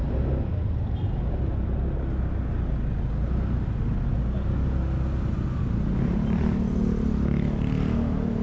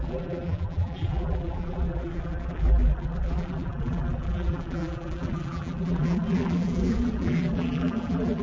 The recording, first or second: first